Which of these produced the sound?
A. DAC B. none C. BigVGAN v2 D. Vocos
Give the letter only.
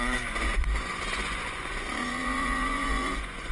D